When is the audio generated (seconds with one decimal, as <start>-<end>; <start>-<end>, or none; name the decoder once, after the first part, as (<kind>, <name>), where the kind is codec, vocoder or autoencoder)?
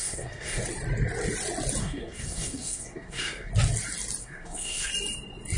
0.0-0.6 (codec, SNAC); 1.8-3.5; 4.2-4.9